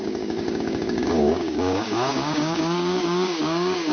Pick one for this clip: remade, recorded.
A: remade